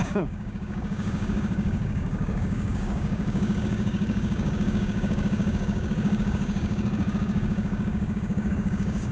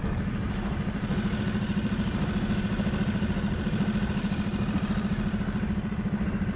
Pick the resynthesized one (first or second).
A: first